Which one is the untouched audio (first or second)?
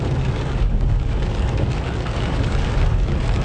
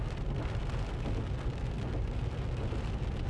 second